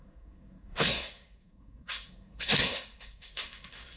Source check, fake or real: fake